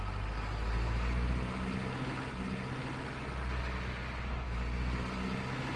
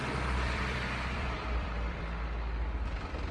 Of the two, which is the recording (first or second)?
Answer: first